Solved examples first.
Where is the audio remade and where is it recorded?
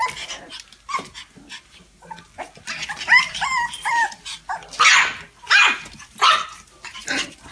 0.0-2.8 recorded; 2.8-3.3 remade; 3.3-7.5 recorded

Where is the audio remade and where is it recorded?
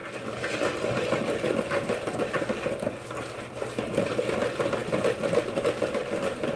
0.0-6.6 recorded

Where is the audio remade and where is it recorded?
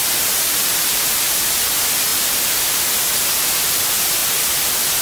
0.0-1.0 remade; 1.0-2.1 recorded; 2.1-2.8 remade; 2.8-5.0 recorded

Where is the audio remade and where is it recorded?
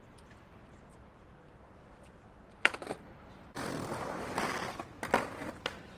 0.0-0.9 recorded; 0.9-4.5 remade; 4.5-6.0 recorded